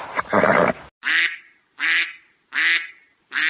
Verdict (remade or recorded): recorded